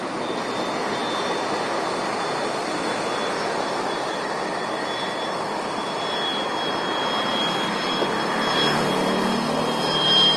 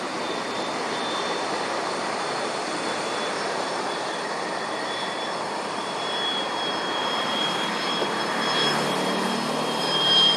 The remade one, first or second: second